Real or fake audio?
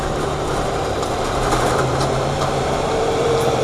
fake